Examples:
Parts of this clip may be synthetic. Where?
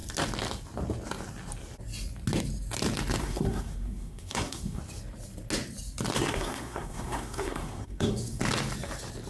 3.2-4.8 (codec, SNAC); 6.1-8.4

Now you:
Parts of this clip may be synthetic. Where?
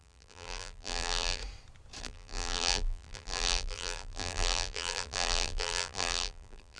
0.0-1.4 (vocoder, BigVGAN v2); 2.0-6.8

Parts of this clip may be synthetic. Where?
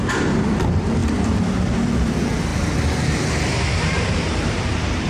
0.0-5.1 (vocoder, BigVGAN v2)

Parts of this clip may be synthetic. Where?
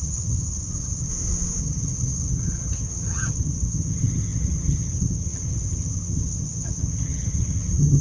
0.0-1.1 (vocoder, HiFi-GAN); 1.6-8.0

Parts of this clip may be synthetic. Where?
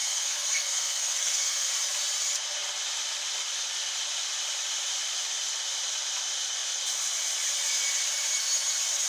0.0-1.7 (codec, SNAC)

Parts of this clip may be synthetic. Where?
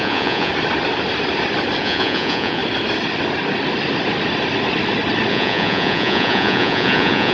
0.0-0.5 (vocoder, Vocos); 1.8-2.6; 5.3-7.3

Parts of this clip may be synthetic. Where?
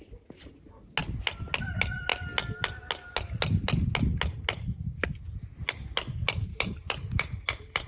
6.5-7.9 (vocoder, BigVGAN v2)